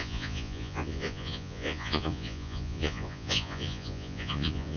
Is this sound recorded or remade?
remade